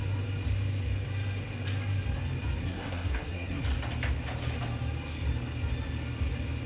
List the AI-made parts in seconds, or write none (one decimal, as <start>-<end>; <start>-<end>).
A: 2.6-3.6